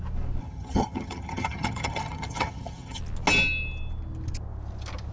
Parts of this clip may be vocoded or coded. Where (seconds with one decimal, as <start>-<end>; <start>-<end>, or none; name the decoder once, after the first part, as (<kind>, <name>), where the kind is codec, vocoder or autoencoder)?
0.4-3.0 (vocoder, HiFi-GAN)